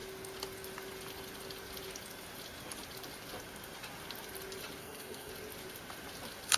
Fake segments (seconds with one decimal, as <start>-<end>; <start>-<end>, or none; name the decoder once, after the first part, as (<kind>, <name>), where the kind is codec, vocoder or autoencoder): 4.8-5.3 (codec, SNAC)